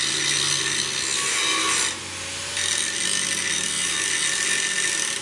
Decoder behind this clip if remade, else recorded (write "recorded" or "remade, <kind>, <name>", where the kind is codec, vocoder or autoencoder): recorded